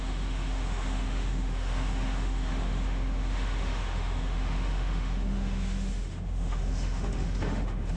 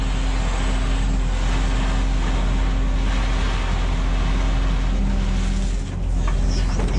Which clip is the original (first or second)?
second